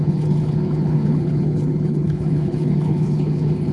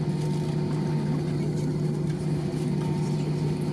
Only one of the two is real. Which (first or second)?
second